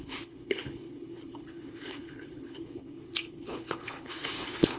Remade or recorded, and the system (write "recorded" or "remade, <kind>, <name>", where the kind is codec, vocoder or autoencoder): remade, codec, HILCodec